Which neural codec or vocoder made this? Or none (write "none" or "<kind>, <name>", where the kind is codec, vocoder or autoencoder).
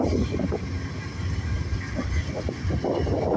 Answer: none